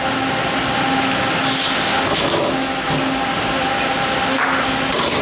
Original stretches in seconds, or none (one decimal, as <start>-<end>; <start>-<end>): 0.0-2.1; 2.9-5.2